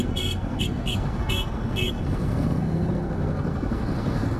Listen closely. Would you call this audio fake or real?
fake